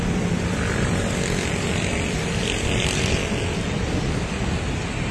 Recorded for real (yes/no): yes